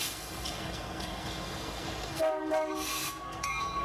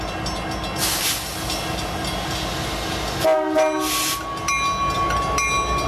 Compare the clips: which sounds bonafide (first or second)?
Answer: second